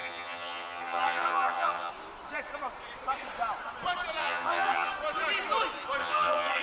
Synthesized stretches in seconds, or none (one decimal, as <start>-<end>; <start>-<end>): 0.0-1.9; 4.2-4.9; 6.0-6.6